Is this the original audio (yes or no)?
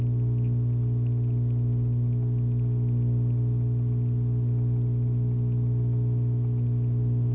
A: yes